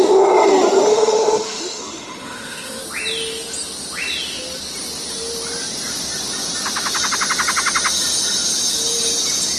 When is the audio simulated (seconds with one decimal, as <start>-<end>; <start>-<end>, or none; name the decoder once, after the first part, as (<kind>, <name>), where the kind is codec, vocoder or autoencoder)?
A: 0.9-2.8 (autoencoder, DAC-VAE)